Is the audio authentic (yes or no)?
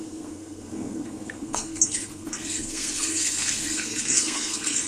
no